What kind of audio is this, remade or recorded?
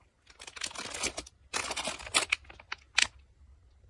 recorded